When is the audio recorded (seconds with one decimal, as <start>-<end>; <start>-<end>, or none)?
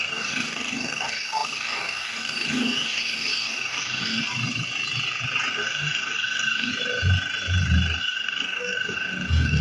4.2-5.5; 6.7-8.0